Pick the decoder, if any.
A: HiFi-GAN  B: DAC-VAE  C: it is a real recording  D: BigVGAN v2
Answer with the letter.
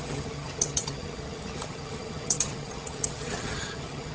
A